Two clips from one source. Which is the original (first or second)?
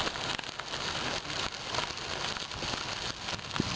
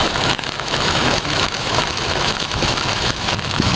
first